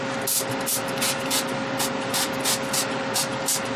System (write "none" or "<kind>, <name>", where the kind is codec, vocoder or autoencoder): none